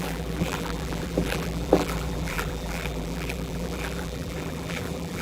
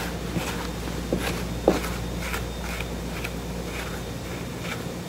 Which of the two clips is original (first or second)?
second